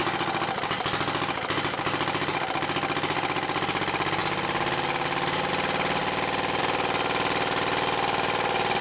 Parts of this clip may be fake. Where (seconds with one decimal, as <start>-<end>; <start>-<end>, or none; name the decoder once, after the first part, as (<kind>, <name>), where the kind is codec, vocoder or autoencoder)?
4.2-5.5 (vocoder, BigVGAN v2); 6.0-6.6